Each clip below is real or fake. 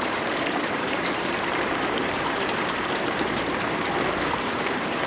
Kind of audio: fake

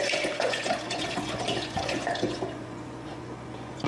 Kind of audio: fake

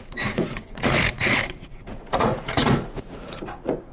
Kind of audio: fake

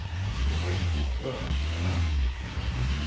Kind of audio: fake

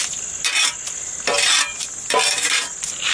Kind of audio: real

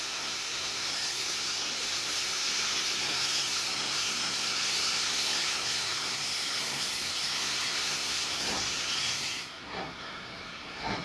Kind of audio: fake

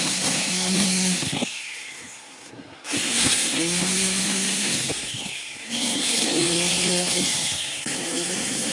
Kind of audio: fake